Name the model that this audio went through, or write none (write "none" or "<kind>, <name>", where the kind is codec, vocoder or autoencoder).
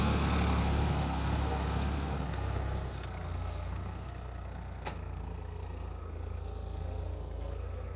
codec, SNAC